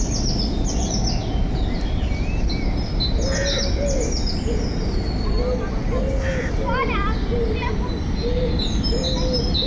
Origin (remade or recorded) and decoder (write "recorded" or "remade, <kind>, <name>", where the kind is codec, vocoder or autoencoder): recorded